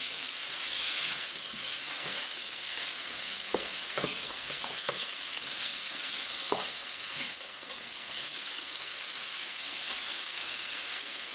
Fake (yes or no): yes